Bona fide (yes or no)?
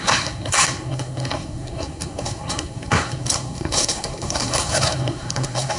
no